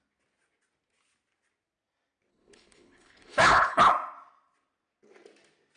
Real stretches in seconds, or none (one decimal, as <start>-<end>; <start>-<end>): 0.0-2.3; 3.9-5.8